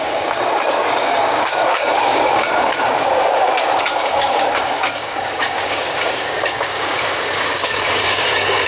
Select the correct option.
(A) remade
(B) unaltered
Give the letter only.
A